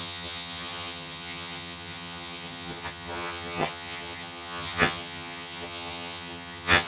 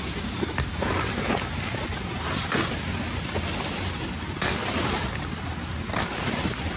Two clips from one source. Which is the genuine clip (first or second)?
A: second